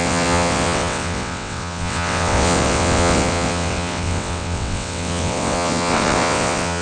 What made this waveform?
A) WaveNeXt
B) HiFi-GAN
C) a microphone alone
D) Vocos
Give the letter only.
A